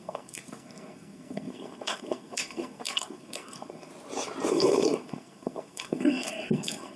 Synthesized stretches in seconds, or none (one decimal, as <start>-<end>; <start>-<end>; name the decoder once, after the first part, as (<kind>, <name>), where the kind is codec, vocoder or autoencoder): 0.0-3.9 (codec, SNAC); 4.5-7.0